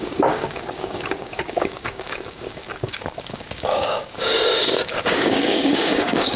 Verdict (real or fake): fake